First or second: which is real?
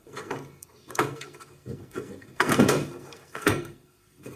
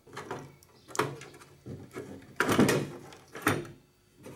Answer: second